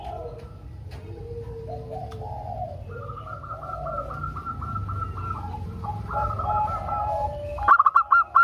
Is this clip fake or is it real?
real